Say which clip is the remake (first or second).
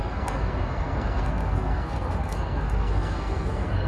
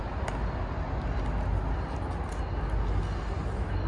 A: first